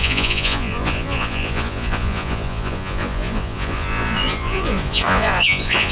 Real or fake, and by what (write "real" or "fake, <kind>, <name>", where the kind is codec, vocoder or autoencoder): fake, vocoder, Vocos